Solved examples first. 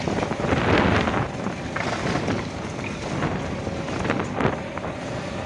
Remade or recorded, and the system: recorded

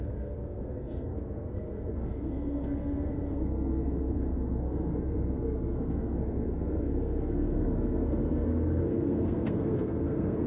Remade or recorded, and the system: remade, codec, SNAC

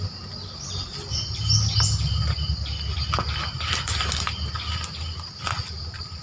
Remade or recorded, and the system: recorded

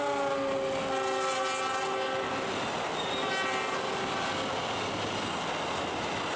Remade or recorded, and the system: recorded